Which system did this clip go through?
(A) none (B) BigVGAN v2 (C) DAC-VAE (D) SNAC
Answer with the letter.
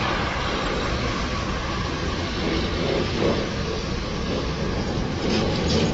A